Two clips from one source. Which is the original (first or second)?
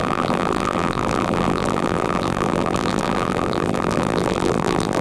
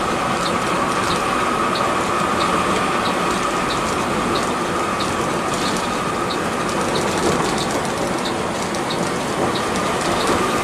second